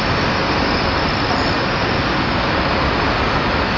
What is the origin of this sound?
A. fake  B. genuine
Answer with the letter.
B